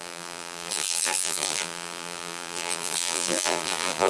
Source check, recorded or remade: remade